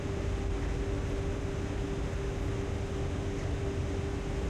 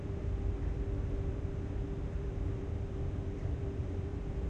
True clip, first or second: first